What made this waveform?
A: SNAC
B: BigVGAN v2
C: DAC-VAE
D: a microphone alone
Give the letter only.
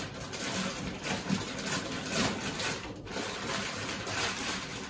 D